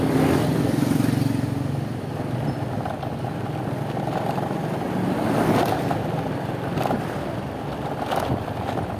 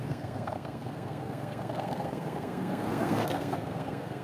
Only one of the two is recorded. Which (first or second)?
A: first